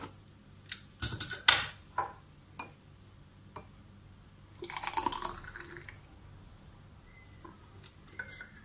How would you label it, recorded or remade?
recorded